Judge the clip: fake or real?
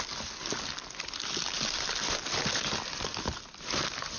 real